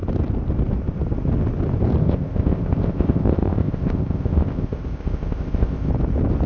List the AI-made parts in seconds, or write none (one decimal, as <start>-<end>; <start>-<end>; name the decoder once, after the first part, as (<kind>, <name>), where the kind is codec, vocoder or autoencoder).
2.0-5.9 (codec, ZipCodec)